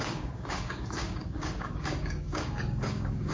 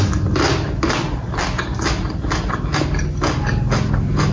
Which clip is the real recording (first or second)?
second